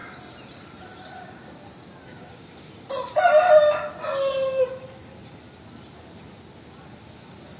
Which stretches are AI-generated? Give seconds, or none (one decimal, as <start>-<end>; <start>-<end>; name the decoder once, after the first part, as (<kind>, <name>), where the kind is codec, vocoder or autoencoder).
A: none